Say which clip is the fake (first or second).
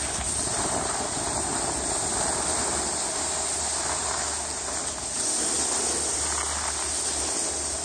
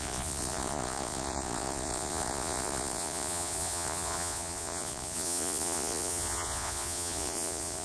second